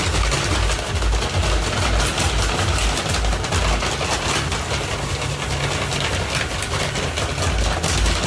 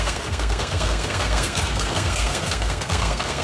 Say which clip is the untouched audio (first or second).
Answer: first